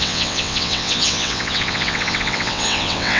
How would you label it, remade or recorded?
remade